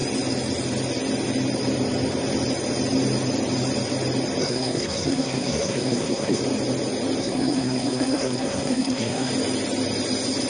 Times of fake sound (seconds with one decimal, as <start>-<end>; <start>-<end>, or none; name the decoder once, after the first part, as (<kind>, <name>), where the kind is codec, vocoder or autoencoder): 4.4-6.4 (codec, SNAC); 7.2-9.3